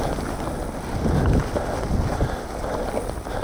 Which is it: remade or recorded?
recorded